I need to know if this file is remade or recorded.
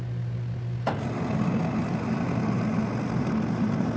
recorded